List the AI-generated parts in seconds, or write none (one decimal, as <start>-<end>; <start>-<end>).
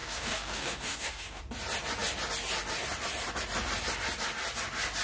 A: 0.0-1.4